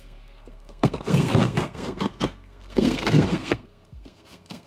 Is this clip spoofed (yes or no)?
yes